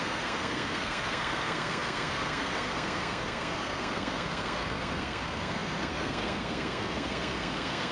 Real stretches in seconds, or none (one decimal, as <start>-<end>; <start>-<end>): none